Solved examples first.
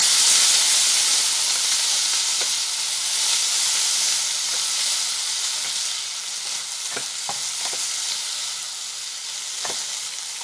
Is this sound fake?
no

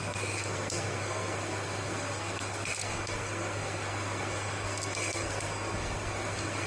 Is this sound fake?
yes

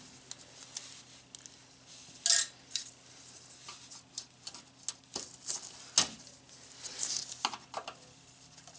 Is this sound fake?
no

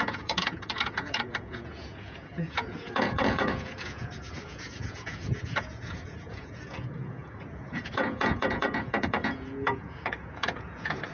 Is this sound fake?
yes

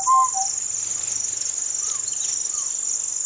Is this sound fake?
no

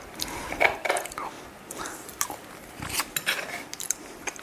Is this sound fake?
no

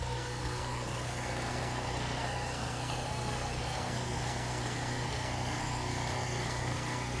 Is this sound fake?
yes